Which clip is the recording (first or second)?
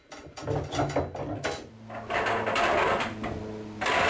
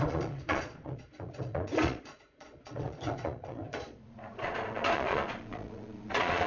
first